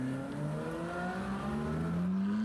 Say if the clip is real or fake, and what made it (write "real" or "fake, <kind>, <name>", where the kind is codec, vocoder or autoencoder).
real